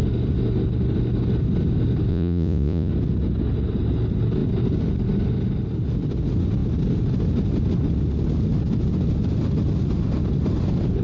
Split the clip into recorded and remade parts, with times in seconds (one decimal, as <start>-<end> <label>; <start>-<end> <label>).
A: 0.0-2.1 recorded; 2.1-2.9 remade; 2.9-11.0 recorded